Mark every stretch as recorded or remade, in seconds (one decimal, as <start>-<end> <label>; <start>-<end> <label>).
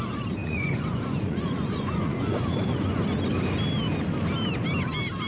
0.0-0.4 recorded; 0.4-3.0 remade; 3.0-5.3 recorded